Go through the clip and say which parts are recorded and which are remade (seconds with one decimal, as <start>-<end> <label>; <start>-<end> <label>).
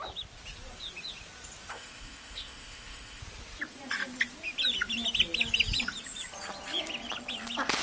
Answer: 0.0-1.7 recorded; 1.7-3.2 remade; 3.2-7.8 recorded